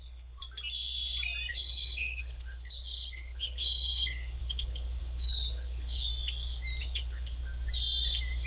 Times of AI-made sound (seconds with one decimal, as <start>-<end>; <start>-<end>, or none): 0.0-0.4; 1.5-6.1; 6.8-7.4